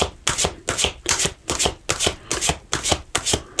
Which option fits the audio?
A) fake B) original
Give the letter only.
B